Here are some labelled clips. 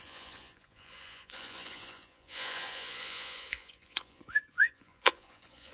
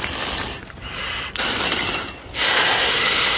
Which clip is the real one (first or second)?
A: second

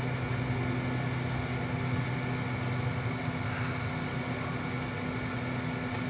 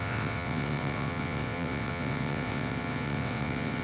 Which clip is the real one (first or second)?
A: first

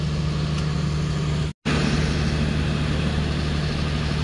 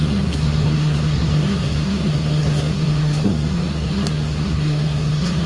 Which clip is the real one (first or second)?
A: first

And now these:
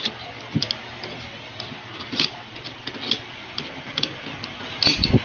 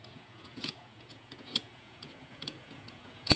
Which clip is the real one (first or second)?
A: first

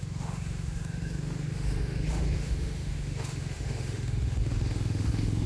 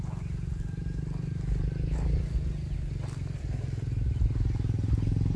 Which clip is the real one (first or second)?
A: second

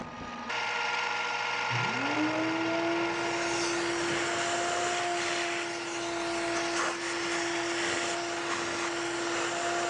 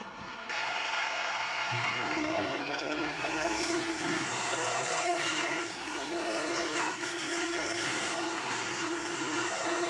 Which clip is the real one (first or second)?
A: first